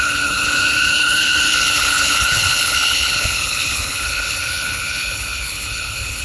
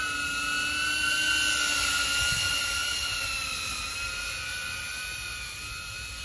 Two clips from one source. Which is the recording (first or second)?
second